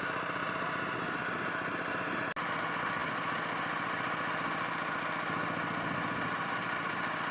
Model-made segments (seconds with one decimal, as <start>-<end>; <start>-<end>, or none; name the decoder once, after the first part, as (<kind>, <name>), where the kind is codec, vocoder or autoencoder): none